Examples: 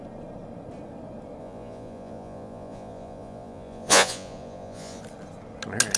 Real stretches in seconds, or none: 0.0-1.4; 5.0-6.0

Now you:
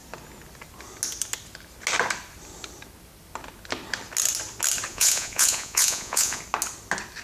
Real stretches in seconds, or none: 0.0-4.9; 6.4-7.2

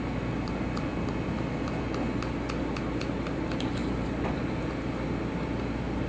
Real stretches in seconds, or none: 0.0-6.1

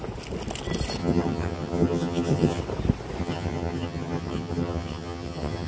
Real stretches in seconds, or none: 0.0-1.0; 2.6-3.2